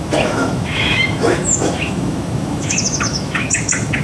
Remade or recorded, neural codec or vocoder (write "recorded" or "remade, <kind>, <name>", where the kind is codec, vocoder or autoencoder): remade, autoencoder, DAC-VAE